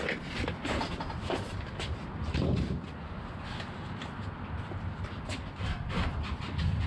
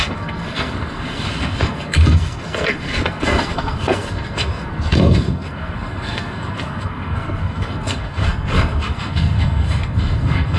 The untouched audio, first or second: first